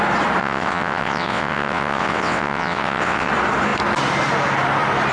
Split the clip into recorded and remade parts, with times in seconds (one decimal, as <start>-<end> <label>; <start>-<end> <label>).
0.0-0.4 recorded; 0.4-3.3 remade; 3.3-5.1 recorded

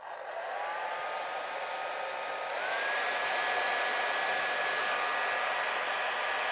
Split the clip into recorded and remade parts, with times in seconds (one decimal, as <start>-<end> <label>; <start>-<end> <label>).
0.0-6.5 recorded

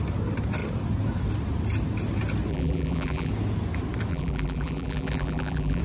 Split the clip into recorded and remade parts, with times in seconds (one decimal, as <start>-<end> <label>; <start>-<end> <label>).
0.0-2.5 recorded; 2.5-3.3 remade; 3.3-4.1 recorded; 4.1-5.8 remade

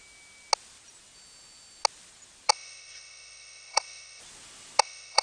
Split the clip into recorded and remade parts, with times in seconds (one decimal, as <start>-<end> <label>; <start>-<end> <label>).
0.0-2.5 recorded; 2.5-4.2 remade; 4.2-4.8 recorded; 4.8-5.2 remade

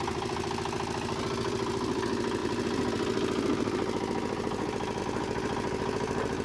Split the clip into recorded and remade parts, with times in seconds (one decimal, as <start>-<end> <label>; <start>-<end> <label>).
0.0-6.4 recorded

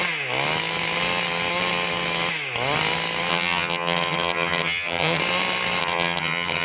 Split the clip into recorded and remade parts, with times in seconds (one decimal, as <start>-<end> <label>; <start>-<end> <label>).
0.0-3.3 recorded; 3.3-5.2 remade; 5.2-5.8 recorded; 5.8-6.6 remade

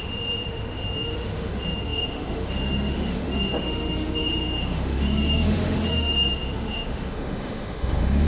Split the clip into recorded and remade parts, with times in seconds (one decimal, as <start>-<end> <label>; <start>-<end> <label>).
0.0-8.3 remade

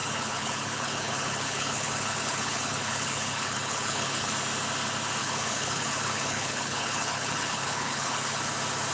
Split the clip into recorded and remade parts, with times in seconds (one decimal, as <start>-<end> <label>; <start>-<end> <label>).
0.0-4.3 remade; 4.3-5.2 recorded; 5.2-8.4 remade; 8.4-8.9 recorded